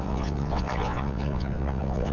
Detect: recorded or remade remade